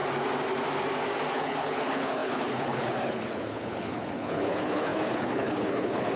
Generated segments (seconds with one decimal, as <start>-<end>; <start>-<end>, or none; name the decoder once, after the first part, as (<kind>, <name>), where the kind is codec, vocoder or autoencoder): 1.3-6.2 (codec, HILCodec)